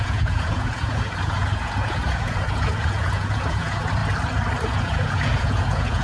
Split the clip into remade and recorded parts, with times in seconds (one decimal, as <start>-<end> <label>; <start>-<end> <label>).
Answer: 0.0-4.0 remade; 4.0-4.7 recorded; 4.7-6.0 remade

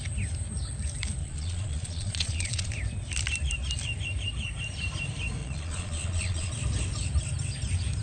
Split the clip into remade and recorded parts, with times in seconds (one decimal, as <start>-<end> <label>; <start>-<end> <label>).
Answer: 0.0-1.2 recorded; 1.2-2.7 remade; 2.7-5.4 recorded; 5.4-6.5 remade; 6.5-8.0 recorded

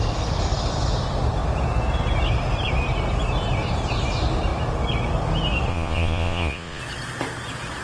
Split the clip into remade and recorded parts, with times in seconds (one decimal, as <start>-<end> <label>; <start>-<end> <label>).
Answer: 0.0-5.7 recorded; 5.7-6.8 remade; 6.8-7.8 recorded

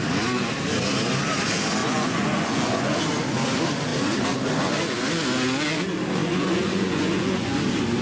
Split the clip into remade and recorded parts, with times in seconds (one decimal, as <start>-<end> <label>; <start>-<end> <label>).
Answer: 0.0-1.8 recorded; 1.8-3.0 remade; 3.0-6.2 recorded; 6.2-7.6 remade; 7.6-8.0 recorded

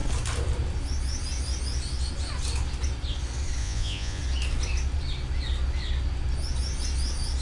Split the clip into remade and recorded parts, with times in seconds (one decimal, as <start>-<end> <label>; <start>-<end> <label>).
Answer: 0.0-3.6 recorded; 3.6-4.2 remade; 4.2-7.4 recorded

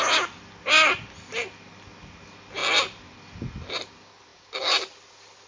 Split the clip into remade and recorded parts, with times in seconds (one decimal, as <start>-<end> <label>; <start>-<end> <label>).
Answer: 0.0-5.5 recorded

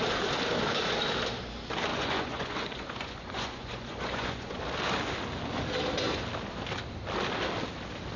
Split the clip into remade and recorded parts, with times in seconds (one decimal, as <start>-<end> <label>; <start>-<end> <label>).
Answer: 0.0-1.9 recorded; 1.9-4.6 remade; 4.6-8.2 recorded

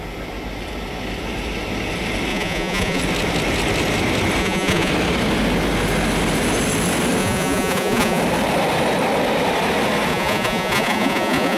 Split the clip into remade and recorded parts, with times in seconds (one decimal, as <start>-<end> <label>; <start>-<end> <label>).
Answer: 0.0-2.3 recorded; 2.3-3.0 remade; 3.0-4.4 recorded; 4.4-4.9 remade; 4.9-7.2 recorded; 7.2-8.2 remade; 8.2-10.1 recorded; 10.1-11.6 remade